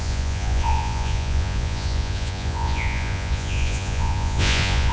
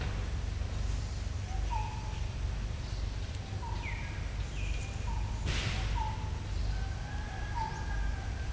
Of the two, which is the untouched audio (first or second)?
second